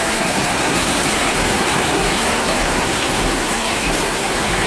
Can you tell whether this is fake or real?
fake